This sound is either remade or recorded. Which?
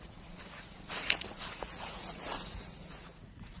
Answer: remade